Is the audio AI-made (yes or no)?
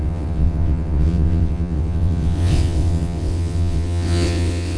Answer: yes